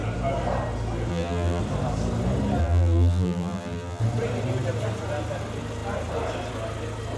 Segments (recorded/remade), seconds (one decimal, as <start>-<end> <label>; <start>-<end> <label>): 0.0-1.1 recorded; 1.1-1.6 remade; 1.6-2.6 recorded; 2.6-4.0 remade; 4.0-7.2 recorded